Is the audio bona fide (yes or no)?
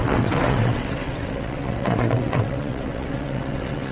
no